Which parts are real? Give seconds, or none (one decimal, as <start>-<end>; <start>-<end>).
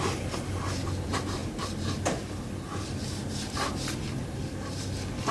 0.0-5.3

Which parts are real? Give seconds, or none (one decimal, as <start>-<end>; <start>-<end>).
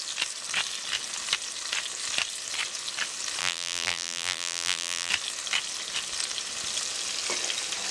0.0-3.4; 5.1-7.9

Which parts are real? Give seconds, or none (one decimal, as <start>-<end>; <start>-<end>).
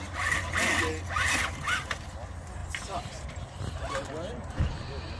0.0-2.6; 3.3-5.2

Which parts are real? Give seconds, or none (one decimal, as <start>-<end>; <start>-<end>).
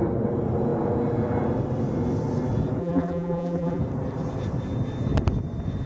0.0-2.8; 3.8-5.9